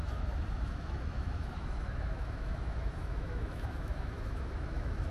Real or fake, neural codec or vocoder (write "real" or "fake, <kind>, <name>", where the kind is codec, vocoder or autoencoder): fake, autoencoder, DAC-VAE